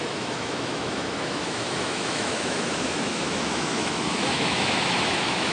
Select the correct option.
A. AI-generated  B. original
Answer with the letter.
A